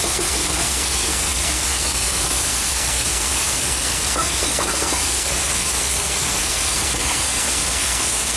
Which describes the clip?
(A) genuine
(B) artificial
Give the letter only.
B